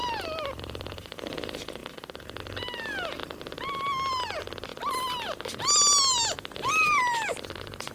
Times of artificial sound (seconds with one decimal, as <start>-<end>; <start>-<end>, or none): 0.0-1.8; 2.4-3.2; 4.2-4.7; 6.6-7.9